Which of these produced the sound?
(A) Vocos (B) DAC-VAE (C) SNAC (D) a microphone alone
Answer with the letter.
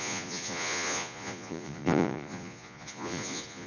A